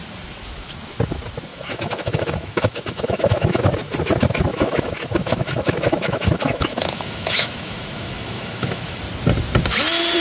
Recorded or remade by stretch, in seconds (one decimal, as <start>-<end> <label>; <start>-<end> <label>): 0.0-1.5 recorded; 1.5-3.6 remade; 3.6-4.5 recorded; 4.5-9.0 remade; 9.0-10.2 recorded